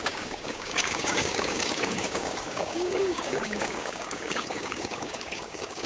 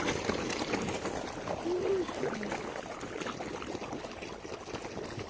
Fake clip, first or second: first